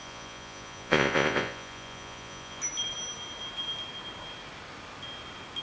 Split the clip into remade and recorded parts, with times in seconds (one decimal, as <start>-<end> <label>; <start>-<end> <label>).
0.0-2.6 remade; 2.6-5.6 recorded